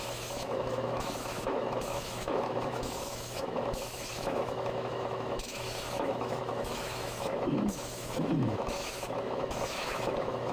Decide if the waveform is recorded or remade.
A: remade